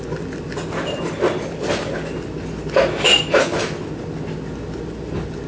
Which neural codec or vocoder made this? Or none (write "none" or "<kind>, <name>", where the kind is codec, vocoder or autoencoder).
none